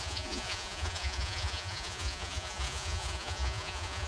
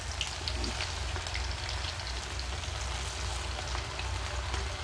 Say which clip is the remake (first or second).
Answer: first